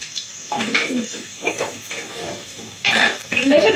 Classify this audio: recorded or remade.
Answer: remade